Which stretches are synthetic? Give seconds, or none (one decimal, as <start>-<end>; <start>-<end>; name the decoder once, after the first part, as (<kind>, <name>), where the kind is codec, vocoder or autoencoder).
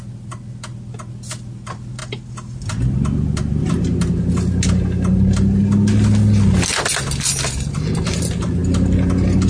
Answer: none